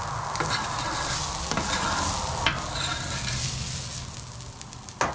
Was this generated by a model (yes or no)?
no